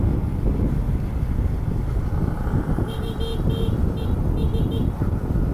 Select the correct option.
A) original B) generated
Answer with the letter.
A